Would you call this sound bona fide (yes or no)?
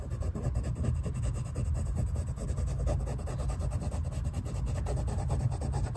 yes